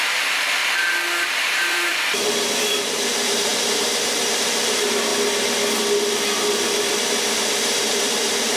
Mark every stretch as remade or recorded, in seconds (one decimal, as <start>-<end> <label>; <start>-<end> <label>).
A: 0.0-0.6 remade; 0.6-1.4 recorded; 1.4-5.1 remade; 5.1-7.8 recorded; 7.8-8.6 remade